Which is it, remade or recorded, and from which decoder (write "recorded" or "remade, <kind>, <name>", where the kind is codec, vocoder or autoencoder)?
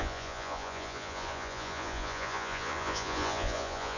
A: remade, vocoder, Vocos